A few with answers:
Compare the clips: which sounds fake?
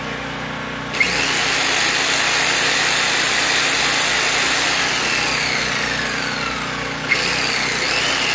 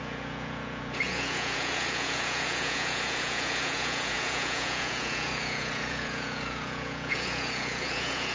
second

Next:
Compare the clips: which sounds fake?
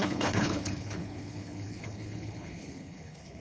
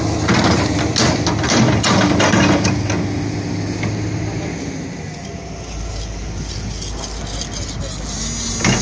first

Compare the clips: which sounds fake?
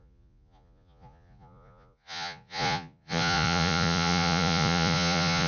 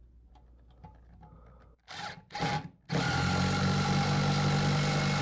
first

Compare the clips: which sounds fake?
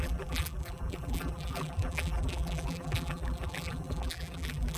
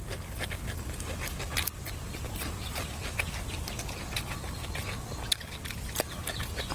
first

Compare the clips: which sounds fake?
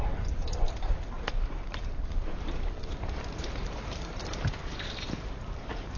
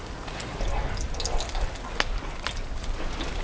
first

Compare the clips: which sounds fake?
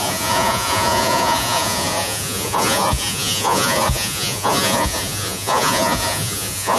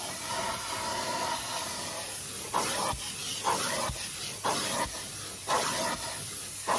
first